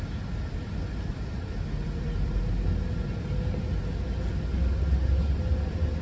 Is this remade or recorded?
recorded